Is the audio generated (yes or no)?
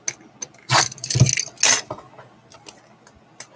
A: no